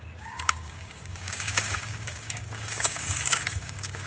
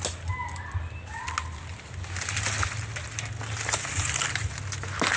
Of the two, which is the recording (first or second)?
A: second